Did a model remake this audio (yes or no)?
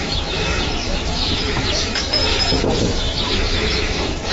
yes